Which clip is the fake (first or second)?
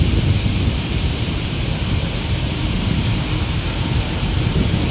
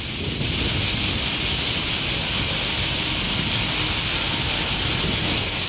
first